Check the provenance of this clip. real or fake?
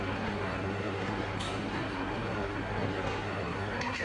fake